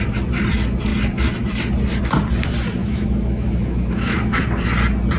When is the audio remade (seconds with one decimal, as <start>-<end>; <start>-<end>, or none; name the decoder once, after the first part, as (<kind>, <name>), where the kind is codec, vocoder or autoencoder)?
2.8-4.4 (autoencoder, DAC-VAE)